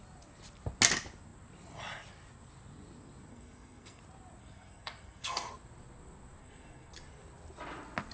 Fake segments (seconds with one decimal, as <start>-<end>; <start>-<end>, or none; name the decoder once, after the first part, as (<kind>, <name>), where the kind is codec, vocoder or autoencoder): 3.3-4.0 (codec, SNAC); 4.4-5.5; 6.4-6.9